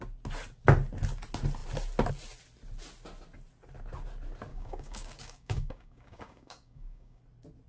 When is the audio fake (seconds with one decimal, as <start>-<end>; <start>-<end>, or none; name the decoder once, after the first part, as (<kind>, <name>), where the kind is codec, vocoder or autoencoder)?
4.5-7.2 (codec, DAC)